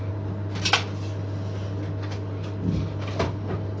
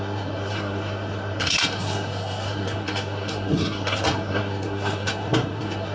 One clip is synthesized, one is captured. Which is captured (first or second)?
first